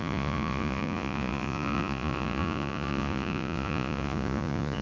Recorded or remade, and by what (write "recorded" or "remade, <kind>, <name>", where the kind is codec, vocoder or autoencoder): remade, vocoder, Vocos